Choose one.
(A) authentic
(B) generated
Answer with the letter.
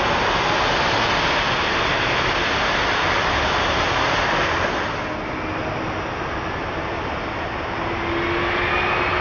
A